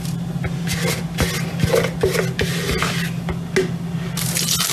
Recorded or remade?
recorded